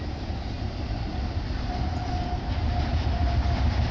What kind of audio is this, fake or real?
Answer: real